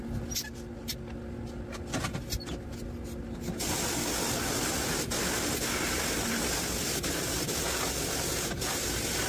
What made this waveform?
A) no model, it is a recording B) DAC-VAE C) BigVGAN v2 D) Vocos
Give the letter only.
A